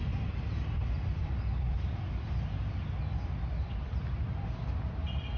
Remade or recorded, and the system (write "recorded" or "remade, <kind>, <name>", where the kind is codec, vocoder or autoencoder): recorded